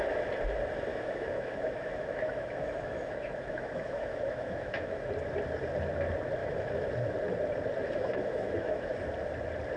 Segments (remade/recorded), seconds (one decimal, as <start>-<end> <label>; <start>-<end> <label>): 0.0-0.9 recorded; 0.9-5.1 remade; 5.1-6.4 recorded; 6.4-6.9 remade; 6.9-7.8 recorded; 7.8-8.9 remade; 8.9-9.8 recorded